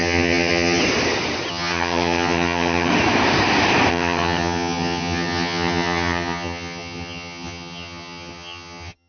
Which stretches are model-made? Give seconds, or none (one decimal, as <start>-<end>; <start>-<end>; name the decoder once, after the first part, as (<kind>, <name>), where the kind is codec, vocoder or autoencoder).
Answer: 0.0-0.8 (vocoder, HiFi-GAN); 1.5-2.9; 3.9-9.1